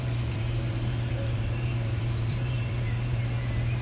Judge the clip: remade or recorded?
remade